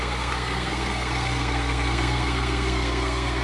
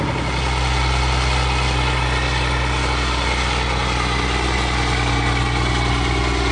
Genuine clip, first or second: second